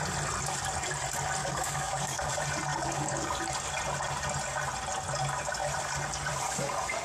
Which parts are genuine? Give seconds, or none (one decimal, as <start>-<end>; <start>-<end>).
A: 0.0-1.4; 2.3-2.7; 3.4-7.0